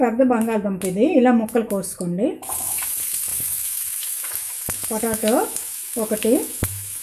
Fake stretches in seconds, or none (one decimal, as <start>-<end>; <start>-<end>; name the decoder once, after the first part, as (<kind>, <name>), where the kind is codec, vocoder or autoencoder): 0.0-7.0 (autoencoder, DAC-VAE)